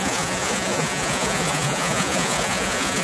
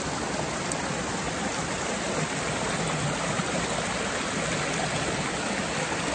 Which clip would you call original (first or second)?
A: second